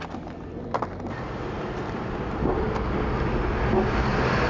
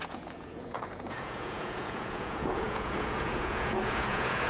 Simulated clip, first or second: second